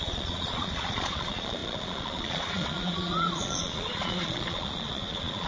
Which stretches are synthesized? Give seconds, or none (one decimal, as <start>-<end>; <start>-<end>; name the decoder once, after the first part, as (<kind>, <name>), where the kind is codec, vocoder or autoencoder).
0.0-5.5 (vocoder, Vocos)